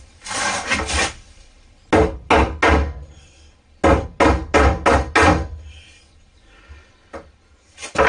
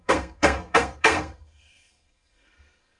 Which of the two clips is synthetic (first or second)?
second